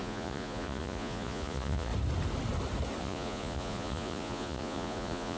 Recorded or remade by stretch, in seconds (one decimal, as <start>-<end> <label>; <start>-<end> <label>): 0.0-1.9 remade; 1.9-3.0 recorded; 3.0-5.4 remade